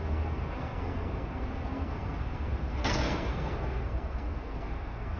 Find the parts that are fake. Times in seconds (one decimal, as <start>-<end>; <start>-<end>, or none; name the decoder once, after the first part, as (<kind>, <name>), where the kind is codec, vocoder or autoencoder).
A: 0.0-5.2 (codec, SNAC)